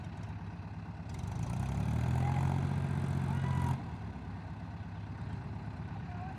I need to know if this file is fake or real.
real